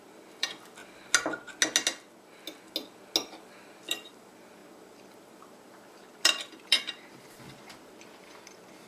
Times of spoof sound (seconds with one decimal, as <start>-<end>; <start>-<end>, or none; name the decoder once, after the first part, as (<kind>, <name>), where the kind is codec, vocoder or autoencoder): 0.0-0.8 (vocoder, BigVGAN v2); 3.9-8.9